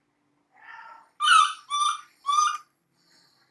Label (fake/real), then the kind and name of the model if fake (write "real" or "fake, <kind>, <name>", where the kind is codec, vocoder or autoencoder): real